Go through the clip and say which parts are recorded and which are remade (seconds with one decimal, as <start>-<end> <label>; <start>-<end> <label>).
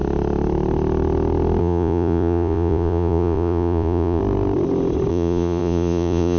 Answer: 0.0-1.6 recorded; 1.6-4.2 remade; 4.2-5.1 recorded; 5.1-6.4 remade